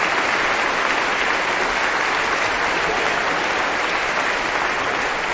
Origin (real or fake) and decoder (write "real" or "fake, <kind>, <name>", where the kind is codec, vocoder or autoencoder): real